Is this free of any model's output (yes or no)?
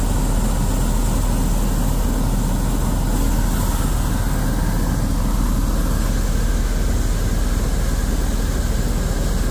yes